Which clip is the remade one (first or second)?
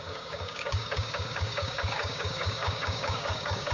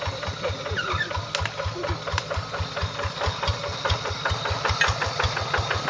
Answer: first